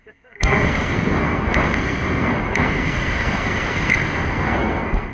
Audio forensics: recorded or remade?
remade